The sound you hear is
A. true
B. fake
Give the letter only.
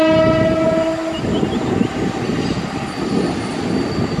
A